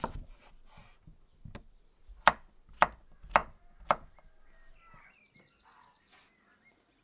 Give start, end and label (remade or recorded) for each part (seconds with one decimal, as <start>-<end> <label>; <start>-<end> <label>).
0.0-7.0 recorded